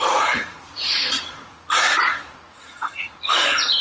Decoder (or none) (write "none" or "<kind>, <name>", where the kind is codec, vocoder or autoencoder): vocoder, Vocos